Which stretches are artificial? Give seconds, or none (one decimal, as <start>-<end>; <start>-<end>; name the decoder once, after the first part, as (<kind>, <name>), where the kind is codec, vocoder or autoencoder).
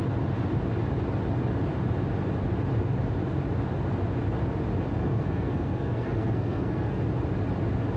5.0-7.0 (codec, SNAC)